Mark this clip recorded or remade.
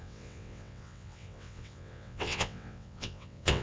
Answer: remade